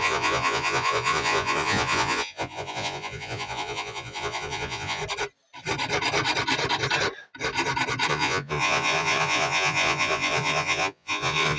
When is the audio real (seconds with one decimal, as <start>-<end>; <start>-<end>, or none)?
5.0-8.1